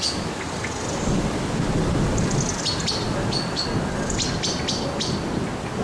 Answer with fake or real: real